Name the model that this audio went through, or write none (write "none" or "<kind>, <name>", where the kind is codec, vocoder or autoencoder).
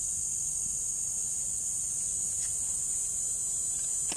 none